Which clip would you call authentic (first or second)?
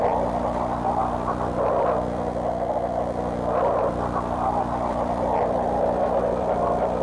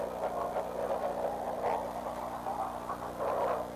second